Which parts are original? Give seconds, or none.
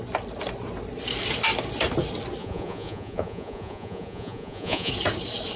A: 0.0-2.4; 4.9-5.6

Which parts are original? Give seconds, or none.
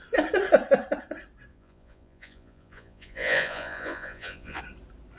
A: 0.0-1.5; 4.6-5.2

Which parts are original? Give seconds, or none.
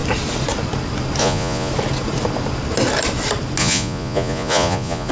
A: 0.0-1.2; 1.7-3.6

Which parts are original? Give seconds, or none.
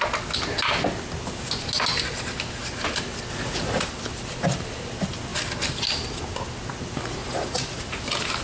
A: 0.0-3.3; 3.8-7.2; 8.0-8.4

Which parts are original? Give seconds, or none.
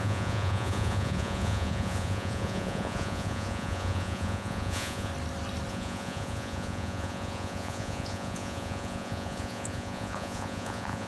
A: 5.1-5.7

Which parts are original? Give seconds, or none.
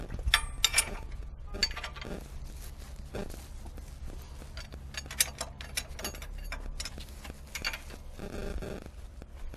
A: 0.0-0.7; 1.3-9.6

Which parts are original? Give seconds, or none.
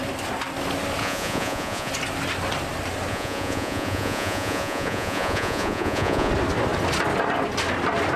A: 0.0-1.0; 1.9-3.1; 6.3-8.2